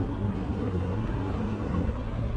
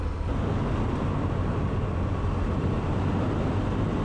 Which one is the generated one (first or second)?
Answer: first